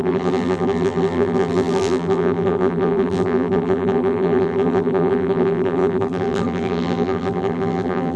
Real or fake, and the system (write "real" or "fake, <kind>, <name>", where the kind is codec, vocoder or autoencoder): fake, vocoder, BigVGAN v2